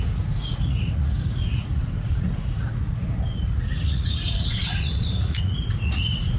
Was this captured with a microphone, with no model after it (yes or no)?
no